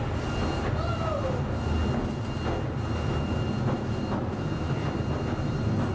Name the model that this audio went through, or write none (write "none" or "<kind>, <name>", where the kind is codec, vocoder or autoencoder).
none